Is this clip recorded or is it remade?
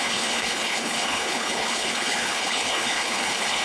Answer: remade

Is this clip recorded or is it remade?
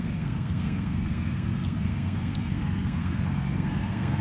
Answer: remade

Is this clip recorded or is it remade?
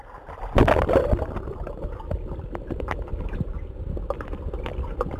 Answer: recorded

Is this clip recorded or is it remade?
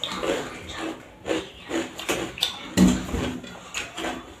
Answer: recorded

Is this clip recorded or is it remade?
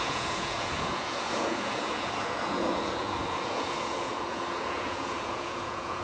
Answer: remade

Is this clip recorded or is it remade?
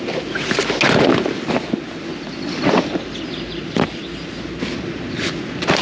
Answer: recorded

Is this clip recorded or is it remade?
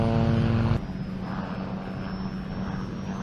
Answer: recorded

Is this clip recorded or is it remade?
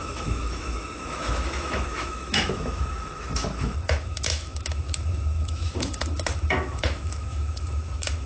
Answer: remade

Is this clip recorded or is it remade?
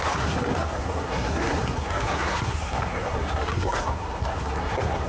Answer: remade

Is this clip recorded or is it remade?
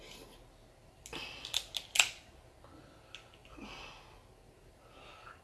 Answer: recorded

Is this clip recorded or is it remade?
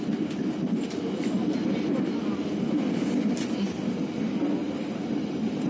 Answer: recorded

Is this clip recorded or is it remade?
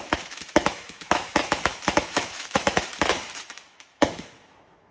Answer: remade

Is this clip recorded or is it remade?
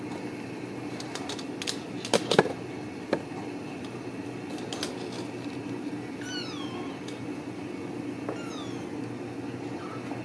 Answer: recorded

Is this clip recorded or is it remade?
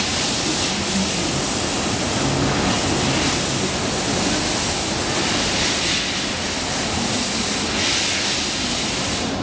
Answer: recorded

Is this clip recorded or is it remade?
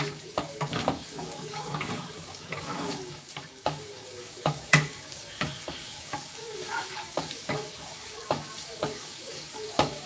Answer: remade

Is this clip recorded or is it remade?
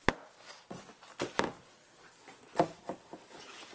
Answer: recorded